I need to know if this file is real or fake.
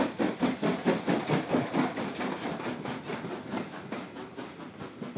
real